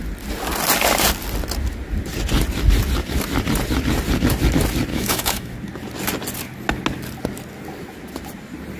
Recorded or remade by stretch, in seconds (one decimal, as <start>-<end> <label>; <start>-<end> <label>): 0.0-4.9 recorded; 4.9-5.5 remade; 5.5-8.8 recorded